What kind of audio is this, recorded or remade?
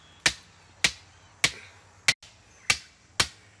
recorded